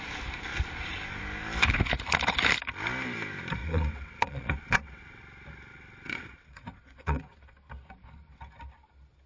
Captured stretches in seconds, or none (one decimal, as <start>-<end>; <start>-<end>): 0.0-3.6; 5.2-5.7; 7.4-9.3